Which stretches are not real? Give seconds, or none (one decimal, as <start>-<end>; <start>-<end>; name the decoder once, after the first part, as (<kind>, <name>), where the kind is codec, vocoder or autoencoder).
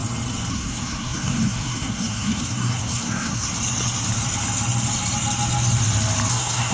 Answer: 0.5-3.5 (codec, SNAC); 6.3-6.7